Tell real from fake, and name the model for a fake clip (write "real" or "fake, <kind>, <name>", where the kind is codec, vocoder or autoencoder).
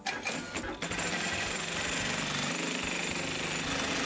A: real